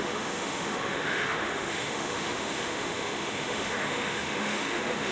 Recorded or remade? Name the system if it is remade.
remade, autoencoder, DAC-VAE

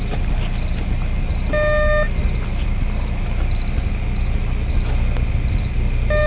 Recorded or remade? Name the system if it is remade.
recorded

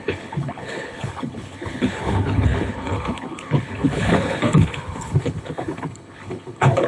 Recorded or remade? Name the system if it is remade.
remade, codec, HILCodec